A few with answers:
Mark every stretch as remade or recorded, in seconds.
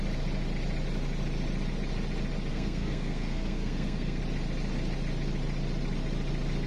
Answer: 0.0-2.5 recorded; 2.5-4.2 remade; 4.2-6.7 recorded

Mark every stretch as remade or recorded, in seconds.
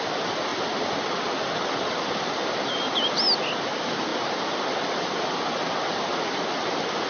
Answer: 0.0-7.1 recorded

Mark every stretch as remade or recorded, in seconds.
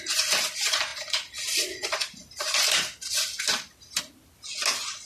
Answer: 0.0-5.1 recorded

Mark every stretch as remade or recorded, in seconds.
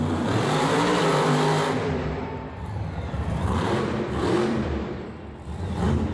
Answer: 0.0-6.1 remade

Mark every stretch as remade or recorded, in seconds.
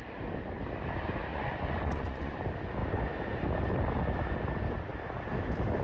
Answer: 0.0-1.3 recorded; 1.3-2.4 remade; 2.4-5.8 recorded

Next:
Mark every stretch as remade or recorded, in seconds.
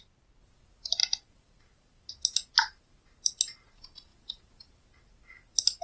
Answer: 0.0-1.0 recorded; 1.0-2.1 remade; 2.1-4.1 recorded; 4.1-4.9 remade; 4.9-5.8 recorded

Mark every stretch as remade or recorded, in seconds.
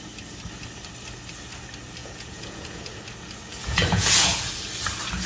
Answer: 0.0-2.0 recorded; 2.0-2.8 remade; 2.8-3.6 recorded; 3.6-4.5 remade; 4.5-5.3 recorded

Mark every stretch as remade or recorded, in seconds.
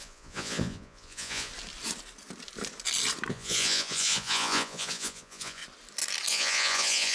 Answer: 0.0-1.5 remade; 1.5-3.3 recorded; 3.3-5.6 remade; 5.6-6.3 recorded; 6.3-7.1 remade